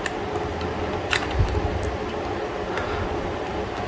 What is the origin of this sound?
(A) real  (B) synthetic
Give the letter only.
A